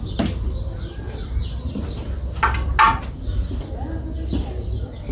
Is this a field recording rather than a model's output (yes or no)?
yes